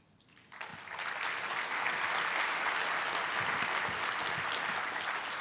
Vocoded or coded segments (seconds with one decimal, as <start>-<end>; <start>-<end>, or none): none

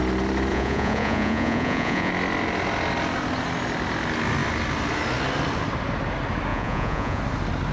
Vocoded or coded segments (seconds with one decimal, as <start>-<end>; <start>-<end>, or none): 0.5-2.1; 6.5-7.2

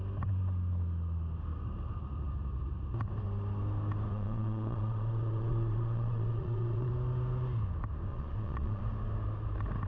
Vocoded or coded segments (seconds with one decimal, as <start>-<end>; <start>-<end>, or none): 4.1-6.9; 8.1-8.8

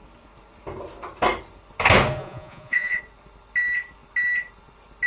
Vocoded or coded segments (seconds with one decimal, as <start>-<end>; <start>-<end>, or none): 2.2-3.0